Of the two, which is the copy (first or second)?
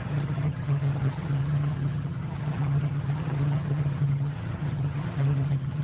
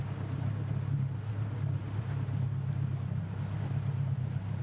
first